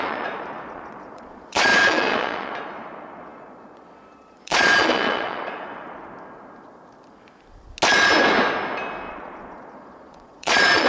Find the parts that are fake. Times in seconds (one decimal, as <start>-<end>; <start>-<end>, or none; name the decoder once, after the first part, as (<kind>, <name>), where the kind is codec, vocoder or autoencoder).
0.0-6.0 (vocoder, Vocos); 9.1-10.9